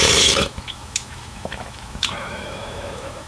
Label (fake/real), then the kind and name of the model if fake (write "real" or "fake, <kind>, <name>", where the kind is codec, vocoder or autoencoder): fake, autoencoder, DAC-VAE